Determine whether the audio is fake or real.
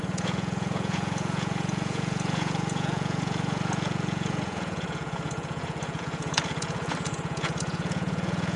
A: fake